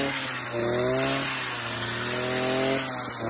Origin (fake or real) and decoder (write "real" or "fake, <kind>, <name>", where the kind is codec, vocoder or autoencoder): real